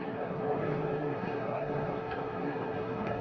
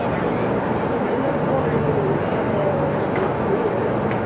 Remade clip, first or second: first